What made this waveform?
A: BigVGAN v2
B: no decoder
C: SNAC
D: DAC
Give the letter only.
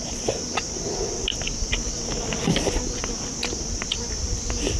B